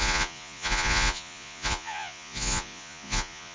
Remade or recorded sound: remade